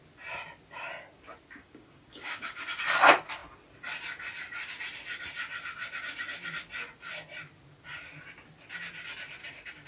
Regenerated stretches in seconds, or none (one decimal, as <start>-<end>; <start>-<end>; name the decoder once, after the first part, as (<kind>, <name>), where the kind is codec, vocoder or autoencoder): 1.6-2.6 (codec, DAC); 9.4-9.9